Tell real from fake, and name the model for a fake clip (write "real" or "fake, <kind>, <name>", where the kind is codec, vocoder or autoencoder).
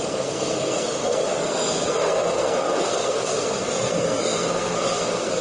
fake, codec, SNAC